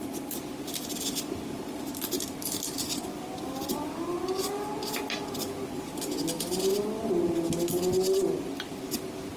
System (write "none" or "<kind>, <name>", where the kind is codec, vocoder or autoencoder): none